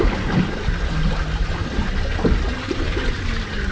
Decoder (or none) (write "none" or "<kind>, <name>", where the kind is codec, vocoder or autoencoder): none